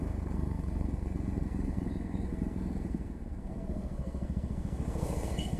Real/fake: fake